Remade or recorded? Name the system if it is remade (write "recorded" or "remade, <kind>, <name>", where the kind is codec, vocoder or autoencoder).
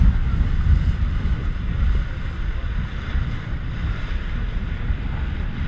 recorded